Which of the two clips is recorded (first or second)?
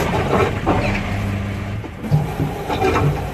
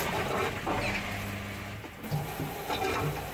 second